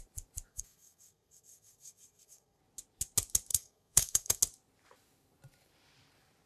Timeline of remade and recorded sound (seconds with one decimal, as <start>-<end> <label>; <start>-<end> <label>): 0.0-0.5 recorded; 0.5-2.6 remade; 2.6-3.5 recorded; 3.5-4.4 remade; 4.4-6.5 recorded